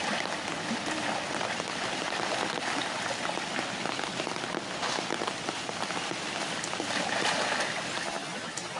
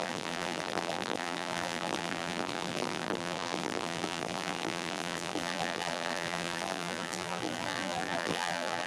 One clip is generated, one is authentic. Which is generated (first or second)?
second